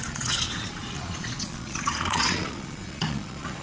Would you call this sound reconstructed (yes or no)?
yes